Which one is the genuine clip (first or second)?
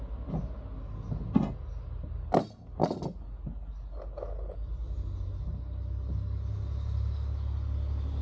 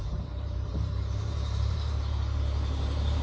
first